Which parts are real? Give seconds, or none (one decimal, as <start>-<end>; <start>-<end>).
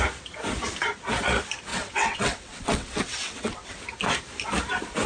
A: 0.0-1.7; 3.8-5.1